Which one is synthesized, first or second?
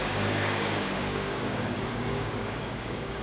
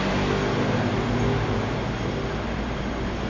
first